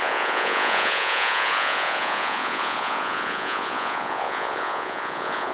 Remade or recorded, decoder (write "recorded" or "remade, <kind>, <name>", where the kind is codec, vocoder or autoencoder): remade, vocoder, Vocos